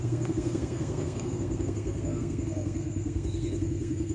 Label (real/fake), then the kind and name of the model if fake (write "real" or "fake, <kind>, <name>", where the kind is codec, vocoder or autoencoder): fake, codec, SNAC